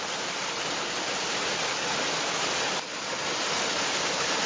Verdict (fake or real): real